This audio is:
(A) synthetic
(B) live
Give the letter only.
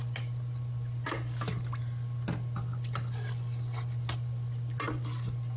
B